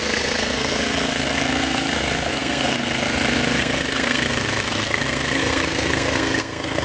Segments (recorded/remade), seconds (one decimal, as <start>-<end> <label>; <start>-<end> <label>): 0.0-6.8 remade